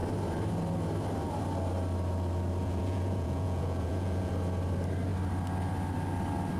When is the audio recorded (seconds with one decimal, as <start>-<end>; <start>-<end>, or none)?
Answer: 0.0-2.6; 4.3-6.6